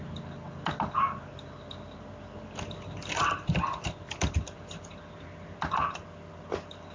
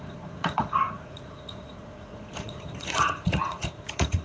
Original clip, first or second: first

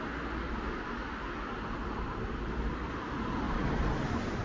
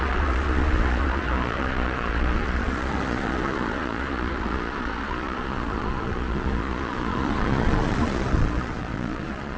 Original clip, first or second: first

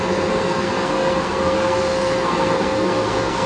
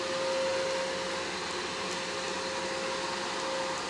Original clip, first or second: second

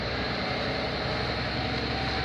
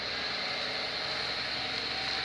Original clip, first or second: second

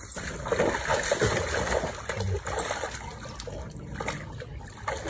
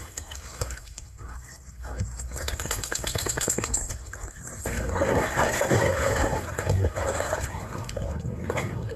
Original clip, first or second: first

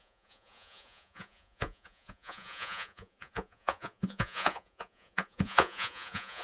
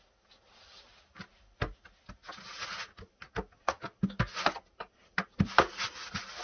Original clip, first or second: second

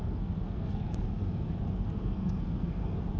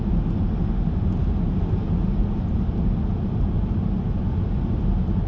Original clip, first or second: second